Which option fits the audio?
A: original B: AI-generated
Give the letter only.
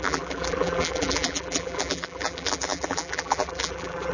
B